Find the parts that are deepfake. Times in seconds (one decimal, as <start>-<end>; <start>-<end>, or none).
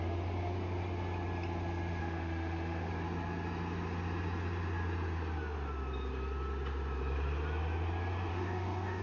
2.0-2.9; 8.3-9.0